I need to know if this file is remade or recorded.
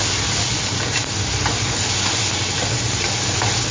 recorded